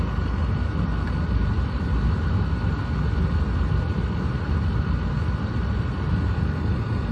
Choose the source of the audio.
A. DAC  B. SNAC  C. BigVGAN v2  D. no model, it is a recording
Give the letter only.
D